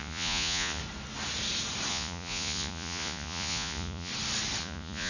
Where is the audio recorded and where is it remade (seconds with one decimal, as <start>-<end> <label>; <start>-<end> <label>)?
0.0-0.8 remade; 0.8-1.9 recorded; 1.9-4.1 remade; 4.1-4.6 recorded; 4.6-5.1 remade